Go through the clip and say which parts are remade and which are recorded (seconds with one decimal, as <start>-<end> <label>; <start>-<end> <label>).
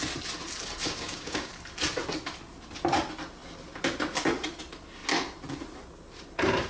0.0-0.8 recorded; 0.8-1.5 remade; 1.5-6.7 recorded